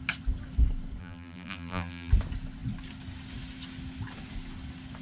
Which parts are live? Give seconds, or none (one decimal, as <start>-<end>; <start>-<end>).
0.0-1.0; 2.1-5.0